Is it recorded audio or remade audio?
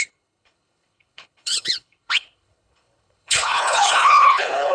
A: remade